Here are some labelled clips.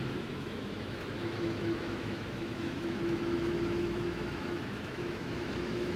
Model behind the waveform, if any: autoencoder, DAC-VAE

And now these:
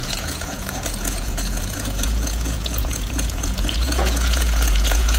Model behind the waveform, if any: vocoder, Vocos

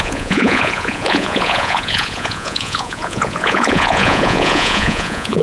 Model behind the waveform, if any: vocoder, Vocos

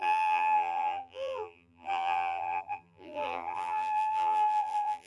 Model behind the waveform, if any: vocoder, BigVGAN v2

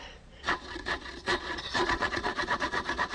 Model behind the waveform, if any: vocoder, Vocos